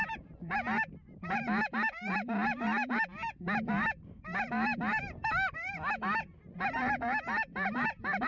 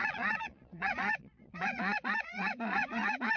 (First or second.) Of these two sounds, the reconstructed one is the second